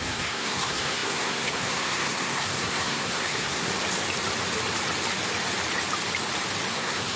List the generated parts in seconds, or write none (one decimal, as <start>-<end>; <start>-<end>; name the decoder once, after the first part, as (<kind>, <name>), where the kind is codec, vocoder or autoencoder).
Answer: 0.0-3.7 (codec, SNAC); 6.7-7.2